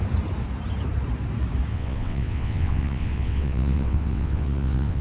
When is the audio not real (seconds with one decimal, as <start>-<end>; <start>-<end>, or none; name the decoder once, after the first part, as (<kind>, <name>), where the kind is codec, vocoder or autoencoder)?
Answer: 1.7-5.0 (vocoder, WaveNeXt)